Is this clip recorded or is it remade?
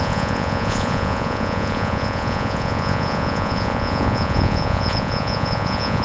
remade